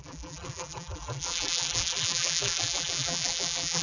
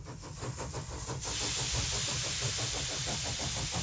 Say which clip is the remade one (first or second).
first